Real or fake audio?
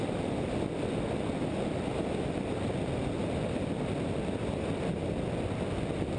real